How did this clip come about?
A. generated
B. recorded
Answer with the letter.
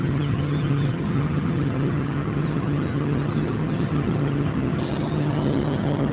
A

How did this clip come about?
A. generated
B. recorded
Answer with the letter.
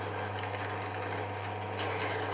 B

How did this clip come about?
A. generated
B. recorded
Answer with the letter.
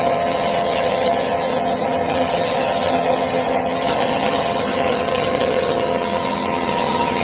A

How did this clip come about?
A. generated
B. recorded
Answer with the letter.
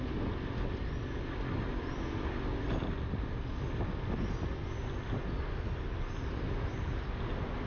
B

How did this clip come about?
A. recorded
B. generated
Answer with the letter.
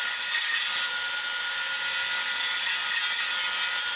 A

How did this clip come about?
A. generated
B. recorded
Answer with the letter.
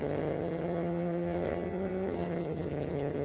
A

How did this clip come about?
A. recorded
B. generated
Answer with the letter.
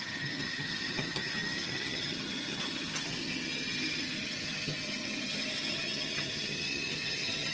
B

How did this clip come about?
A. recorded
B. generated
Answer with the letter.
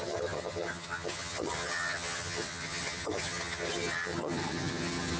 B